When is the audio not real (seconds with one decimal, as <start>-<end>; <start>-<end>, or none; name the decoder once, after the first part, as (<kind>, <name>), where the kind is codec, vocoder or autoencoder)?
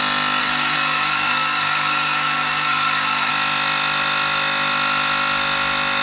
0.4-3.3 (codec, SNAC)